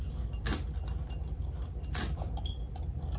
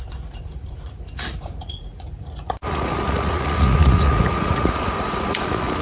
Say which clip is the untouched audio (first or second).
first